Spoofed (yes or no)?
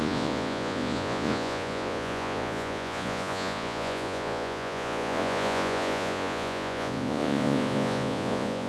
yes